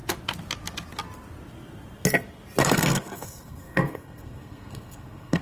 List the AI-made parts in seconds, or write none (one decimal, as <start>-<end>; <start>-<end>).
2.6-5.4